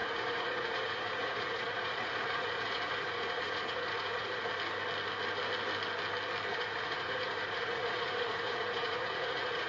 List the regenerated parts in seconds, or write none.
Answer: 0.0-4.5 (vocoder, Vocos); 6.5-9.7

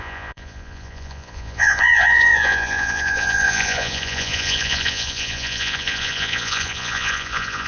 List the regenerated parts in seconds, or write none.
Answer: 0.0-7.7 (vocoder, Vocos)

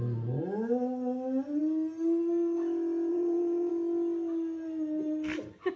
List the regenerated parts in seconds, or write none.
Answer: 3.1-3.7 (vocoder, Vocos)

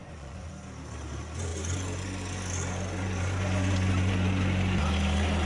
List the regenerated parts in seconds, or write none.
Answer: 0.0-0.5 (vocoder, Vocos)

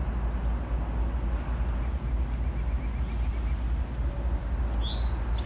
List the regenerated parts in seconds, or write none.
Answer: none

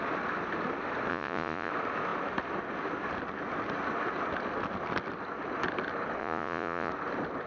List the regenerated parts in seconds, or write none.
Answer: 1.1-1.7 (vocoder, Vocos); 6.2-6.9

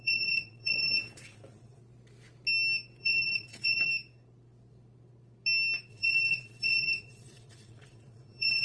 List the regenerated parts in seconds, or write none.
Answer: 0.0-1.8 (vocoder, Vocos); 3.0-3.9; 5.9-8.6